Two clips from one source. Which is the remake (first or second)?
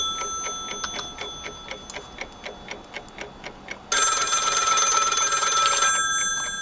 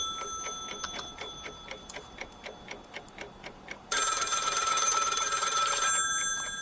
second